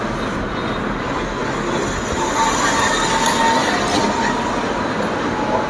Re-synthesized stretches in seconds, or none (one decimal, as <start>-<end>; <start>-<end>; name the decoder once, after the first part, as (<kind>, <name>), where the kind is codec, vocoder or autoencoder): none

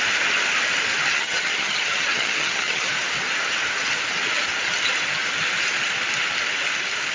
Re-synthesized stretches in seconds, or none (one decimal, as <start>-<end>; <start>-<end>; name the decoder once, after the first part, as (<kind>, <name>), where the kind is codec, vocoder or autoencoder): 1.1-2.9 (vocoder, HiFi-GAN)

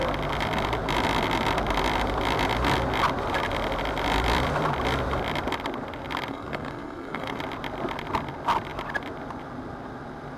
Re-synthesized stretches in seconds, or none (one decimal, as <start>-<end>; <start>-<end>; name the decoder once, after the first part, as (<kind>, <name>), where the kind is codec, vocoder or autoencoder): 6.3-7.4 (codec, SNAC)

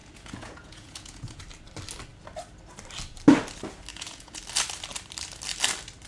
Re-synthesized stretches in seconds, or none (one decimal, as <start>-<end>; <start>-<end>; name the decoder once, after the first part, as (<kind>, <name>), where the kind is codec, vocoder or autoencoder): 0.0-1.4 (vocoder, Vocos); 3.9-4.4

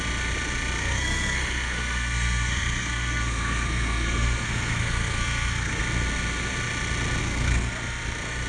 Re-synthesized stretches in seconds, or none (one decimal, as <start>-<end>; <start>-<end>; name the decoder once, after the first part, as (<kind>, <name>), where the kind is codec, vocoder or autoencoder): 0.8-5.8 (codec, SNAC); 7.2-7.7

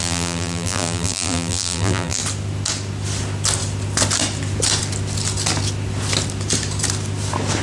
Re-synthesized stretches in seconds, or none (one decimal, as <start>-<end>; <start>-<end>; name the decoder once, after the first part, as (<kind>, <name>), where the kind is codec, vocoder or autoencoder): 0.0-2.2 (vocoder, BigVGAN v2)